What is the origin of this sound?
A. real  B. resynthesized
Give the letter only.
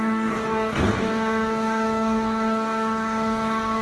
B